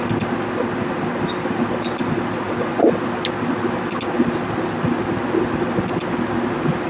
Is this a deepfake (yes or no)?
no